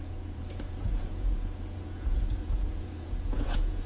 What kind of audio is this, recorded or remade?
remade